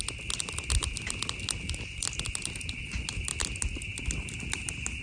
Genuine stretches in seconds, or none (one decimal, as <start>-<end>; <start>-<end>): 0.0-5.0